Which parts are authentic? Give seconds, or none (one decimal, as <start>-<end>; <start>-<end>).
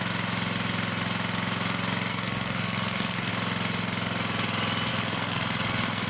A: 0.0-2.1; 3.3-4.9